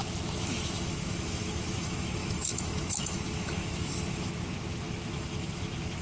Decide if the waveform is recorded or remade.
remade